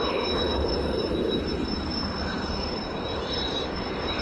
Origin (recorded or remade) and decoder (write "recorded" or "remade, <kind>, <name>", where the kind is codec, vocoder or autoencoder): remade, vocoder, BigVGAN v2